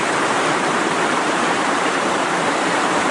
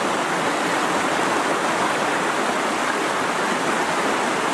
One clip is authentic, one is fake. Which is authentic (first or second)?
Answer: second